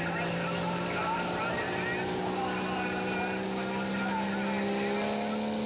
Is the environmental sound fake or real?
real